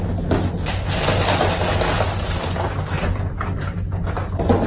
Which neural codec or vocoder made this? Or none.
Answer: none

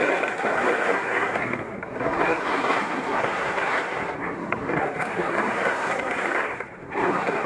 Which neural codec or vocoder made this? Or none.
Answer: codec, SNAC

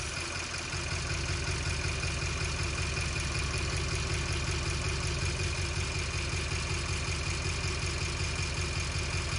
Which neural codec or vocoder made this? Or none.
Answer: none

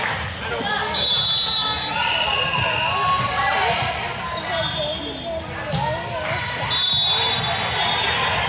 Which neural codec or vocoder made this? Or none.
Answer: none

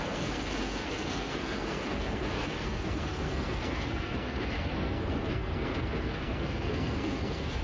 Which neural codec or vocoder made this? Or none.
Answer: codec, SNAC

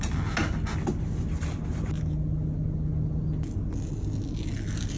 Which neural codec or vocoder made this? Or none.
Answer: none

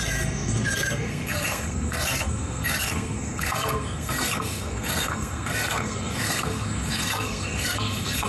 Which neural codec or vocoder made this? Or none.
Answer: codec, SNAC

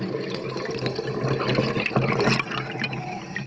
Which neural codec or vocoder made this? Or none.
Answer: none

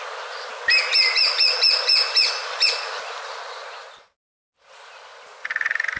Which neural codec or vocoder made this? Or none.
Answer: none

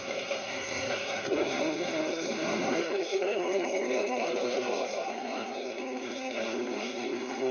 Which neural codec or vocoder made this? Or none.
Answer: codec, SNAC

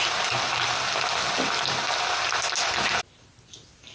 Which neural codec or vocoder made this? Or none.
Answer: none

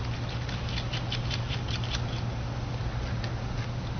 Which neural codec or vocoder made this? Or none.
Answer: none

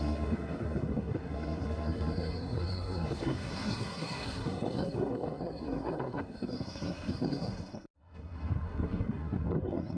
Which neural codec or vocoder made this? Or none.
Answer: codec, SNAC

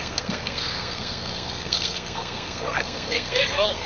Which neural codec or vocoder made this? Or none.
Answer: codec, SNAC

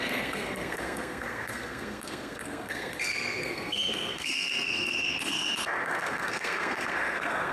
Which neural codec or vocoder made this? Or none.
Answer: codec, SNAC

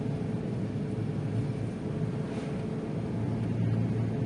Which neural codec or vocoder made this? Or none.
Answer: none